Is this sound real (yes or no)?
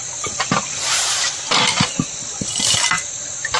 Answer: yes